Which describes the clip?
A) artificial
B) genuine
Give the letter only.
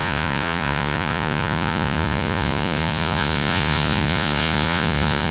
A